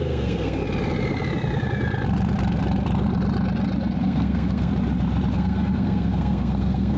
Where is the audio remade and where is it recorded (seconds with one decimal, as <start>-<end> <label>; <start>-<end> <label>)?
0.0-0.6 remade; 0.6-4.0 recorded; 4.0-4.7 remade; 4.7-5.3 recorded; 5.3-7.0 remade